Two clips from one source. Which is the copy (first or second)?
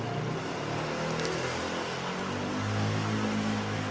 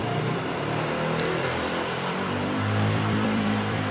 second